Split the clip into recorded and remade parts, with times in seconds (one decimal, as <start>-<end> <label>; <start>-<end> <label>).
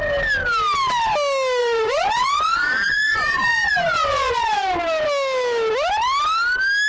0.0-1.6 recorded; 1.6-4.7 remade; 4.7-6.9 recorded